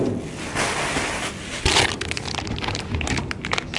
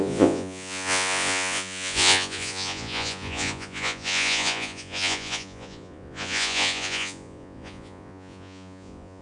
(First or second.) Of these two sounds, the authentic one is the first